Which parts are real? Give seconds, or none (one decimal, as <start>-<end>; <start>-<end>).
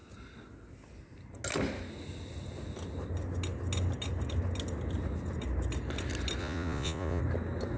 0.0-6.4; 7.2-7.8